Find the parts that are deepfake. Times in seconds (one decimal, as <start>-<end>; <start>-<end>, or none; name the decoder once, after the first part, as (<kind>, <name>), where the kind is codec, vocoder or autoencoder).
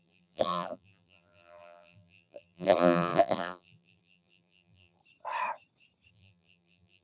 0.0-5.0 (vocoder, BigVGAN v2); 6.1-7.0